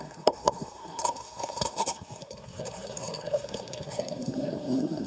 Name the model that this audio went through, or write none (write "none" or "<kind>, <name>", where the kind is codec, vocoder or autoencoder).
codec, SNAC